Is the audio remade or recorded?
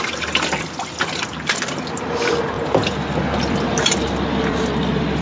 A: recorded